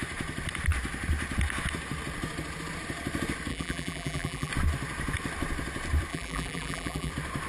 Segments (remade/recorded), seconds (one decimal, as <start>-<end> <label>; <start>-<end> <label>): 0.0-3.5 recorded; 3.5-4.5 remade; 4.5-6.1 recorded; 6.1-7.1 remade; 7.1-7.5 recorded